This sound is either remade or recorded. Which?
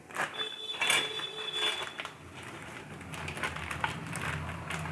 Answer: recorded